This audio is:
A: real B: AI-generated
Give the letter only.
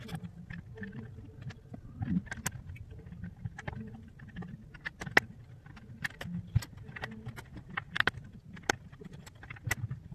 A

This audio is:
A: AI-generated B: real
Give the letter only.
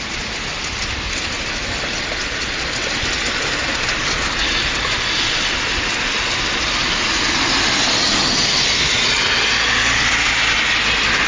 B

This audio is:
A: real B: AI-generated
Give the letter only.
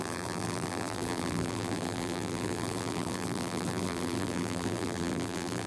B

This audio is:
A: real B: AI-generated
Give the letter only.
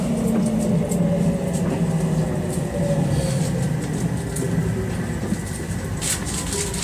A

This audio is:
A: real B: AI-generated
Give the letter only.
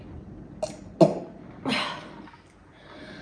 A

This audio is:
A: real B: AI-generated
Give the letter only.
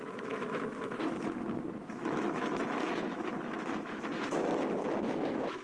B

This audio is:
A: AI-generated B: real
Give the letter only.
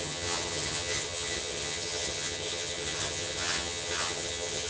A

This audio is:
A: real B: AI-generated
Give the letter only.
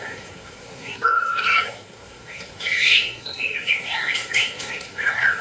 B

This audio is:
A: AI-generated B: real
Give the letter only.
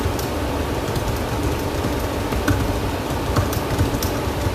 B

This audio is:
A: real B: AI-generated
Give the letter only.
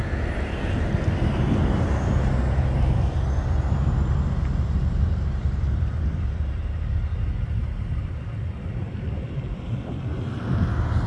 A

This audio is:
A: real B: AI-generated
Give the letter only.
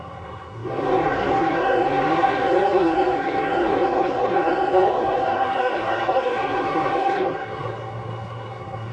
B